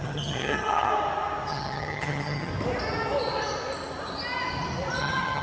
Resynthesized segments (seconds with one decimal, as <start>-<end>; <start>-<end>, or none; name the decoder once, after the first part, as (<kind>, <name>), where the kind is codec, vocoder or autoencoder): 0.0-0.9 (vocoder, HiFi-GAN); 1.5-2.5; 5.0-5.4